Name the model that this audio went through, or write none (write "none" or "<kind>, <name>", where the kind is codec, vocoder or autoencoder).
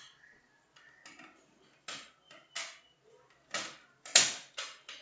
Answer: none